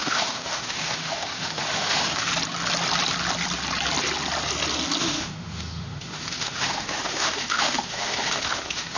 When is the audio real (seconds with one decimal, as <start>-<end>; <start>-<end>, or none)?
2.3-5.0